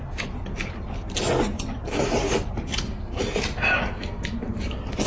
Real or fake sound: real